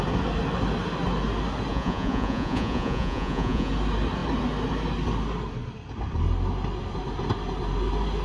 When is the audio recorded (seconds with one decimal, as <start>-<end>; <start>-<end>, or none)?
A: 0.0-1.7; 3.7-8.2